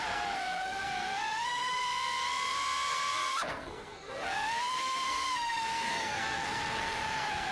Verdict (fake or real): fake